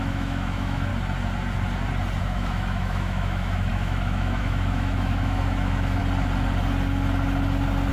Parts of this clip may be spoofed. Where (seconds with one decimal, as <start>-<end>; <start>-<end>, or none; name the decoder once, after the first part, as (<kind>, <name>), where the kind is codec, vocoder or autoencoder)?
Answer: 0.0-0.9 (autoencoder, DAC-VAE); 2.2-6.0